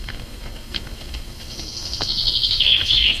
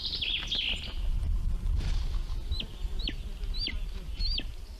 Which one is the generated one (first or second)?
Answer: first